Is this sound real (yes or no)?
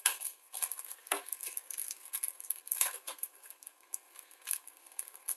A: no